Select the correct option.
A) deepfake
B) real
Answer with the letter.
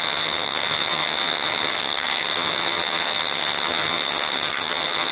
A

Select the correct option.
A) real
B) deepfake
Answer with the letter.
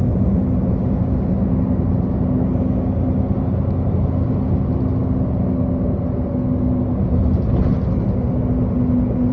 A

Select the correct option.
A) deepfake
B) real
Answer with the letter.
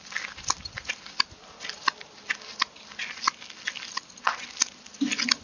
B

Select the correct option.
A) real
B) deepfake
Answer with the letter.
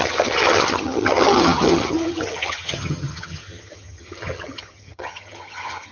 B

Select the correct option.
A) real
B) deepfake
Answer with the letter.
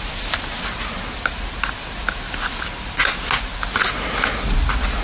A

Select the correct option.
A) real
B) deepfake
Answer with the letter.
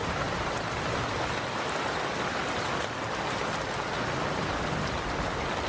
A